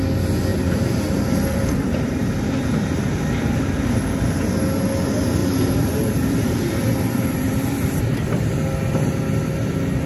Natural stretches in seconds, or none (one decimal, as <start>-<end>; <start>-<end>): 0.0-0.5; 4.5-5.4; 8.0-10.1